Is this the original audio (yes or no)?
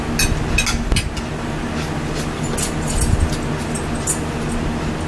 yes